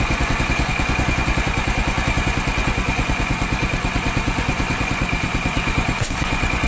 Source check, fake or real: fake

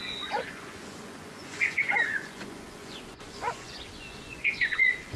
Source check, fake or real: fake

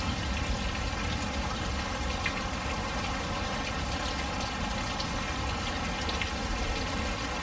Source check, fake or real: real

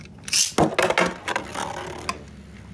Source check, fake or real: real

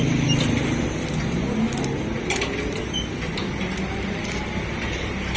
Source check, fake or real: real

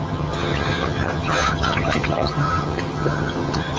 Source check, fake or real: fake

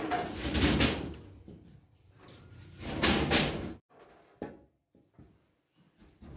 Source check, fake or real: fake